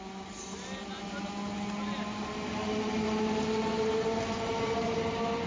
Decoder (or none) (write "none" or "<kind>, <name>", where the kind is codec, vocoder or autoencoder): none